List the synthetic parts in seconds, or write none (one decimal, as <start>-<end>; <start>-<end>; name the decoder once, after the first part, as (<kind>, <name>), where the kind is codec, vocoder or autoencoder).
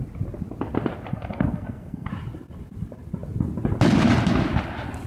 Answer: 1.1-2.1 (codec, SNAC)